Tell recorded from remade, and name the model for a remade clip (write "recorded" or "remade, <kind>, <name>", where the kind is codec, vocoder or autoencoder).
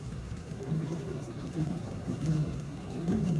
remade, codec, SNAC